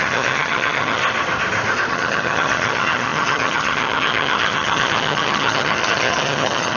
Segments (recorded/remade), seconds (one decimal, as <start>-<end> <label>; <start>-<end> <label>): 0.0-1.0 remade; 1.0-1.9 recorded; 1.9-6.8 remade